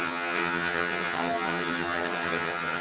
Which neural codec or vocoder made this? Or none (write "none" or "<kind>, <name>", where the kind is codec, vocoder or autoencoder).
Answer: vocoder, HiFi-GAN